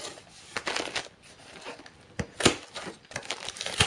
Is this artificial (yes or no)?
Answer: no